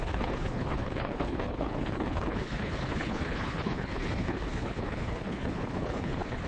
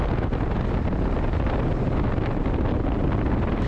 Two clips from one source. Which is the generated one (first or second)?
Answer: first